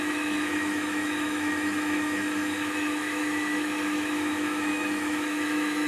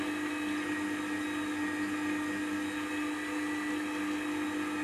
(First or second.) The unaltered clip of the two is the second